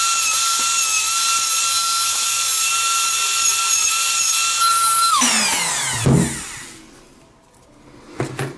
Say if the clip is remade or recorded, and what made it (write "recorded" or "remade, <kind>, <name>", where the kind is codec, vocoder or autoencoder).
recorded